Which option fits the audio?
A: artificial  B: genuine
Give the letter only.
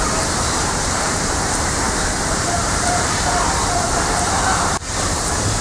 A